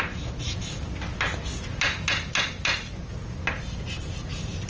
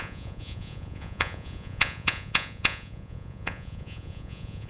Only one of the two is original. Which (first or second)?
first